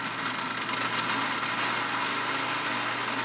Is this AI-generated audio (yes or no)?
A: no